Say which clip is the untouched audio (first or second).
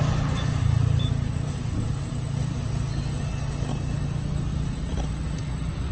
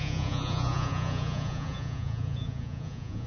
first